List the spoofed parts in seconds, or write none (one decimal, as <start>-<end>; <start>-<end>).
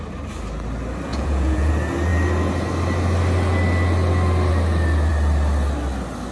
1.1-1.7